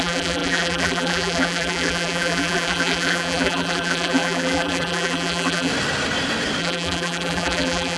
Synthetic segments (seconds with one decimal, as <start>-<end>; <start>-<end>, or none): 0.0-5.7; 6.6-8.0